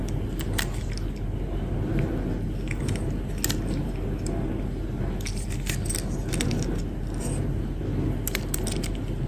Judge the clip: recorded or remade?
recorded